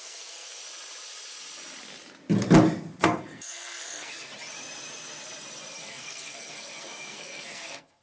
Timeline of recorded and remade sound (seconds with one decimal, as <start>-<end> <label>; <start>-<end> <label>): 0.0-0.6 remade; 0.6-3.0 recorded; 3.0-4.3 remade; 4.3-5.8 recorded; 5.8-8.0 remade